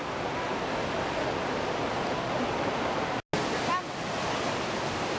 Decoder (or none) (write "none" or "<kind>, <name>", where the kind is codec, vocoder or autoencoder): none